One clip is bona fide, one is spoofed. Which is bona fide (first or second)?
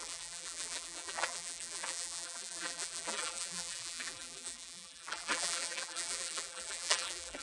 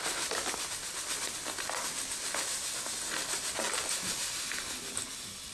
second